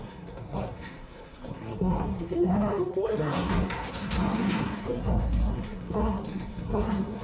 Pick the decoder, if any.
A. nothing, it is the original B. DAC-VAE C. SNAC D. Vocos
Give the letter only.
C